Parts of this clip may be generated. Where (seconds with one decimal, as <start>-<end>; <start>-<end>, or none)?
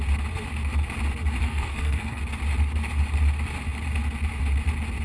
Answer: 1.4-2.2